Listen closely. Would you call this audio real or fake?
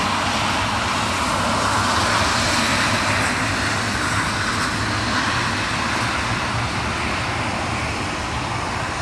real